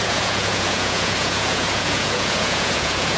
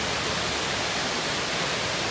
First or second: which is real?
second